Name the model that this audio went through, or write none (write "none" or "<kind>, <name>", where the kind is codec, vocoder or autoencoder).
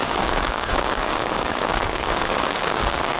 codec, DAC